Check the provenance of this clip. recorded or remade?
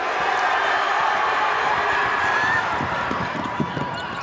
recorded